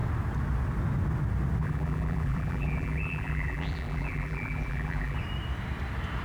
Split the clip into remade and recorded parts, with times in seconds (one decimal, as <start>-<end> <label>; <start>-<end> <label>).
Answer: 0.0-1.6 recorded; 1.6-5.2 remade; 5.2-6.2 recorded

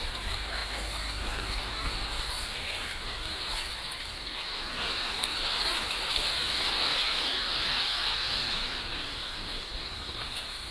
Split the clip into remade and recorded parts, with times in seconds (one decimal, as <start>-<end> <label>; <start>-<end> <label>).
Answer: 0.0-10.7 remade

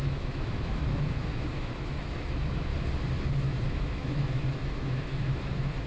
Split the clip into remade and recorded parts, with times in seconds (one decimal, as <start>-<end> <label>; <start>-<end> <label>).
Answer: 0.0-2.7 remade; 2.7-3.3 recorded; 3.3-5.9 remade

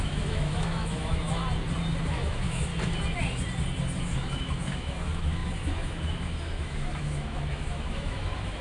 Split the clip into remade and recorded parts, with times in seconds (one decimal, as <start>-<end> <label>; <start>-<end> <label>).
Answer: 0.0-1.4 remade; 1.4-2.1 recorded; 2.1-2.7 remade; 2.7-4.0 recorded; 4.0-8.6 remade